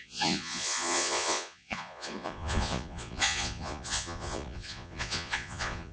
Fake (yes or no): yes